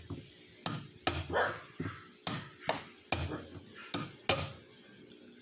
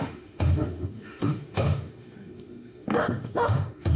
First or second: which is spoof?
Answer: second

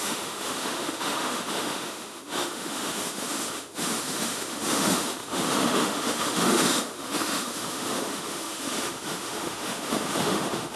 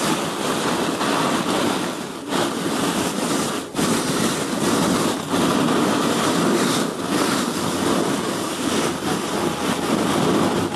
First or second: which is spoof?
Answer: first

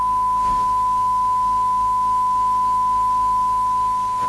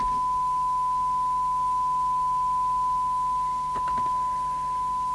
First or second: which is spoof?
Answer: first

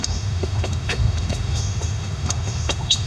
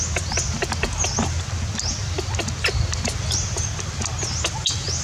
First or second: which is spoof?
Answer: first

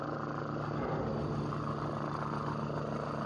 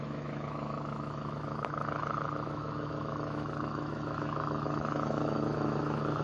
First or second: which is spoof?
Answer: second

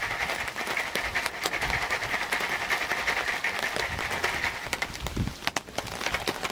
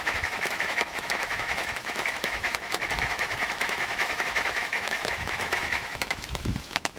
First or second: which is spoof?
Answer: second